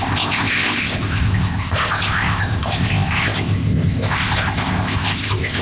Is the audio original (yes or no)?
no